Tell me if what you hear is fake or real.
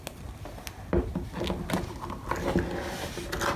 real